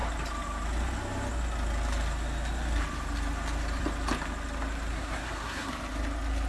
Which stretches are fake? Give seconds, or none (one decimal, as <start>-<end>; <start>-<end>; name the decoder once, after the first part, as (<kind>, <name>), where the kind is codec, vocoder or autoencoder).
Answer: 4.9-5.7 (codec, SNAC)